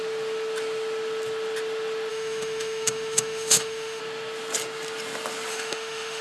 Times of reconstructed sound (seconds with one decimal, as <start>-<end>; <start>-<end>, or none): 2.1-4.0; 5.5-6.2